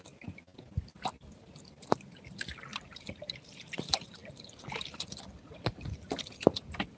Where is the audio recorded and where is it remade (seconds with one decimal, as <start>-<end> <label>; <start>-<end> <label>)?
0.0-2.7 recorded; 2.7-3.2 remade; 3.2-7.0 recorded